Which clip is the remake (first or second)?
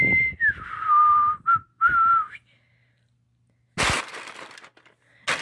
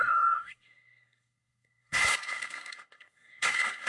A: second